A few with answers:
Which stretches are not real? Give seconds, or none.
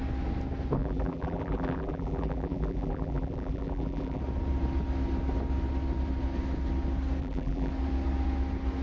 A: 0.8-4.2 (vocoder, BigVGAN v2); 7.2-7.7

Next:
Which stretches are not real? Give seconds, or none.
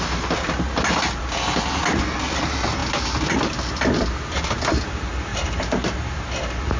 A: 5.3-6.3 (vocoder, BigVGAN v2)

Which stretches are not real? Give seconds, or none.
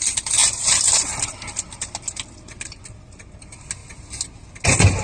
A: none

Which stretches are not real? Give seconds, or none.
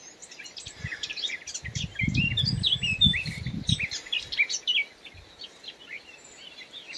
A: 0.0-1.3 (vocoder, BigVGAN v2); 3.1-3.9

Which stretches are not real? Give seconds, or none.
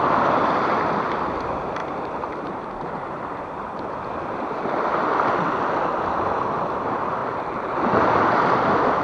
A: 1.8-4.0 (vocoder, BigVGAN v2); 7.2-7.8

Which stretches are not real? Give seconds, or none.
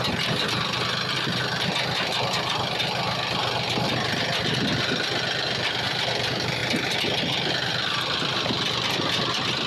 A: none